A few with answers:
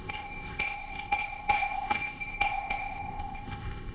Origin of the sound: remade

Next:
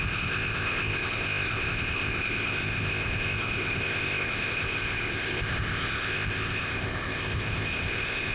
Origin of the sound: remade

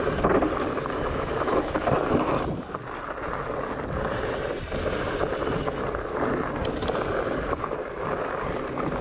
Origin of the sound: recorded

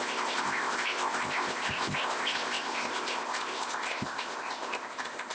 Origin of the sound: remade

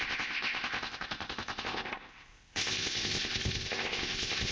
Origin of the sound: remade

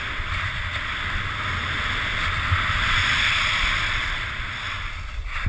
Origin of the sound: recorded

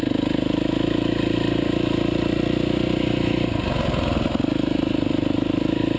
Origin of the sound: recorded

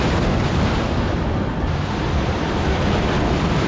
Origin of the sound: recorded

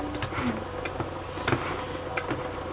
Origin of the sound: recorded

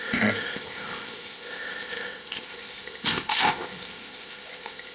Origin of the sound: remade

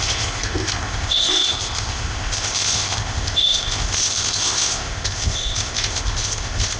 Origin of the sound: remade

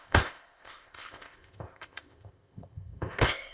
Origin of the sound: remade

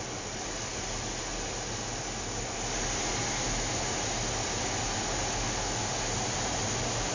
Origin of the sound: recorded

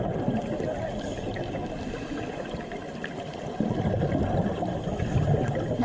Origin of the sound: recorded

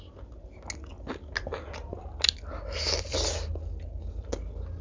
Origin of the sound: recorded